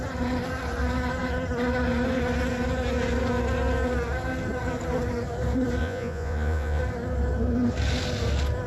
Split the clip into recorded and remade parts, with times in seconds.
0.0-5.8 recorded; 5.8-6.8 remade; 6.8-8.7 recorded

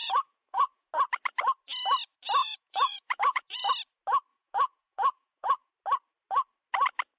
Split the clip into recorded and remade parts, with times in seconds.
0.0-0.9 remade; 0.9-2.4 recorded; 2.4-3.7 remade; 3.7-4.3 recorded; 4.3-5.7 remade; 5.7-7.2 recorded

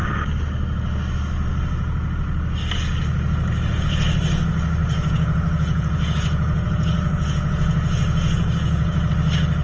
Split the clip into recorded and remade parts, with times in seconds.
0.0-4.8 recorded; 4.8-9.1 remade; 9.1-9.6 recorded

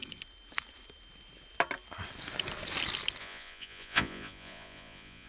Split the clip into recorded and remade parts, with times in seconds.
0.0-3.2 recorded; 3.2-5.3 remade

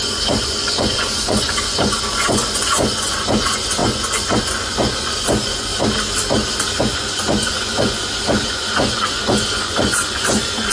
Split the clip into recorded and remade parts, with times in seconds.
0.0-5.7 remade; 5.7-6.8 recorded; 6.8-10.7 remade